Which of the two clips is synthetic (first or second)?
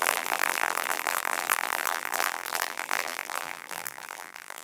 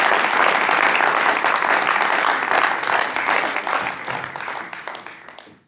first